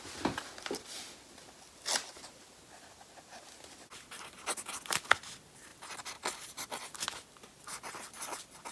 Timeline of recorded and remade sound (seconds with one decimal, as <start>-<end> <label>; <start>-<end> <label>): 0.0-8.7 recorded